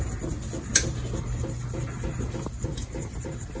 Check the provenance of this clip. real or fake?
real